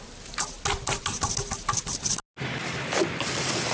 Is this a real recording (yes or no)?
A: yes